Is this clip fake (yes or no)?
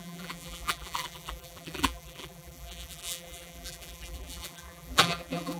yes